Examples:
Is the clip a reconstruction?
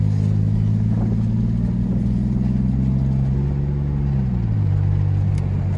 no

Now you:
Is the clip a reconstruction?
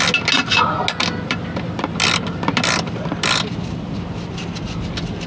no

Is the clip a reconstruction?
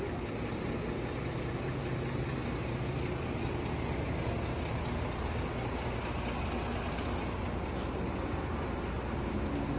no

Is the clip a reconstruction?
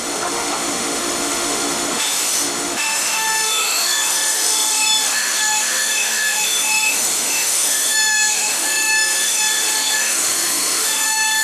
yes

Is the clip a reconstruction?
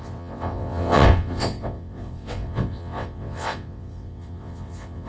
yes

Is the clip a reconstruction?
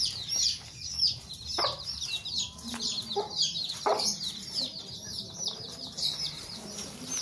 yes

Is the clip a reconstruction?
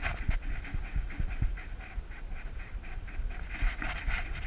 no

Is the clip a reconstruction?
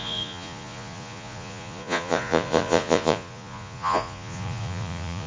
yes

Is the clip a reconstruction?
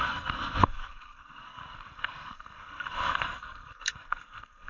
yes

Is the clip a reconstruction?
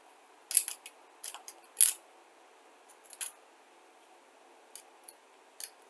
no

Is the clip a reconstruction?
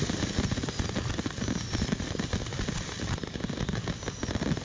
no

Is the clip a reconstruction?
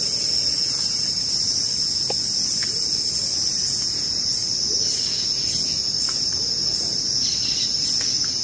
no